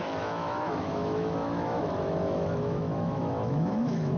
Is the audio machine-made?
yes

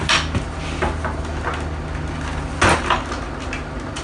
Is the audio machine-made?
no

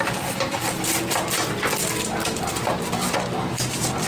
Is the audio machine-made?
no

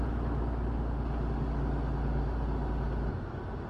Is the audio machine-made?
no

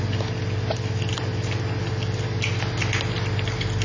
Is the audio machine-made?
no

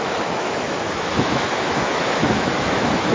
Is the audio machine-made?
yes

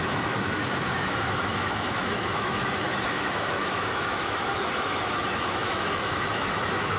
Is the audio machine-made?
yes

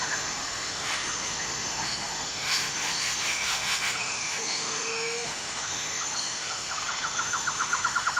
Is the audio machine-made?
yes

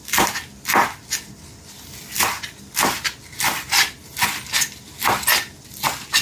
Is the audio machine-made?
no